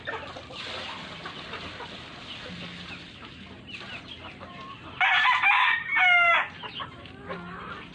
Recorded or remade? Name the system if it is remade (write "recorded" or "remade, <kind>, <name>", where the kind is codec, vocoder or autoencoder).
recorded